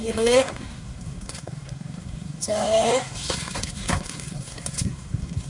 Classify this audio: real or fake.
fake